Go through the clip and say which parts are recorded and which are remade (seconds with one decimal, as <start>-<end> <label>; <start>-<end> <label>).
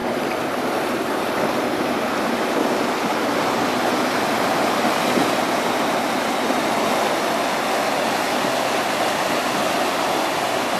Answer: 0.0-2.0 remade; 2.0-5.2 recorded; 5.2-6.5 remade; 6.5-10.8 recorded